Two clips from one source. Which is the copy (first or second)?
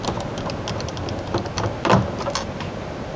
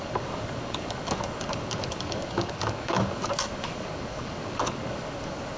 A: second